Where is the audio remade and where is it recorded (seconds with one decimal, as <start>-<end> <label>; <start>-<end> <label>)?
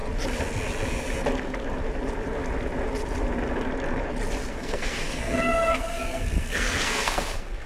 0.0-4.5 recorded; 4.5-7.7 remade